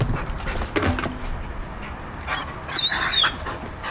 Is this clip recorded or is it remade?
recorded